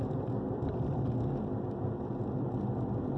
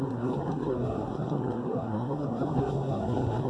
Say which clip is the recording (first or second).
first